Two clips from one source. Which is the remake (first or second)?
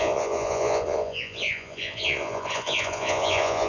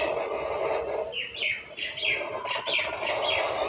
first